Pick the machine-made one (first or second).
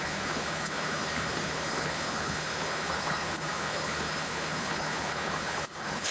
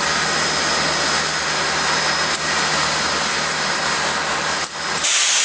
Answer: first